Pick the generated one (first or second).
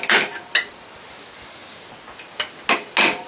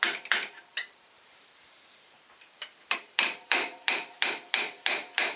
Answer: second